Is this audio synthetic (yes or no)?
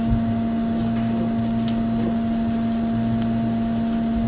no